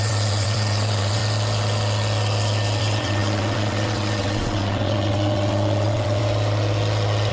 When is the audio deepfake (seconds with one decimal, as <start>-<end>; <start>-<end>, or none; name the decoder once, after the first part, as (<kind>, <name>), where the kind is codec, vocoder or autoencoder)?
0.0-1.2 (vocoder, WaveNeXt); 2.8-6.2